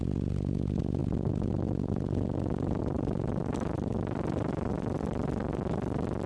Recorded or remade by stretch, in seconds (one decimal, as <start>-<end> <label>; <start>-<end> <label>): 0.0-6.3 recorded